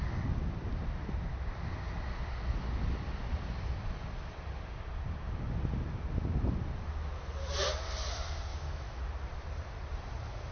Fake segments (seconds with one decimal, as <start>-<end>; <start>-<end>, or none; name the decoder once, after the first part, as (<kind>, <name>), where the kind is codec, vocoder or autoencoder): 8.5-9.0 (autoencoder, DAC-VAE)